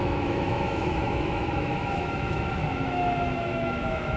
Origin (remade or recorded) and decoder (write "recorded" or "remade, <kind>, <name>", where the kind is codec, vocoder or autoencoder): remade, autoencoder, DAC-VAE